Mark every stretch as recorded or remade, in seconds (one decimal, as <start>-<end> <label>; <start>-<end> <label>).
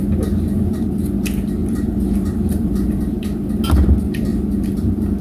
0.0-1.6 recorded; 1.6-3.2 remade; 3.2-4.3 recorded; 4.3-5.2 remade